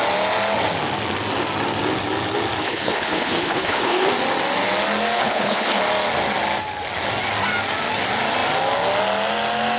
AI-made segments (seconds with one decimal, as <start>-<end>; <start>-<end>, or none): 2.6-4.1; 5.2-5.8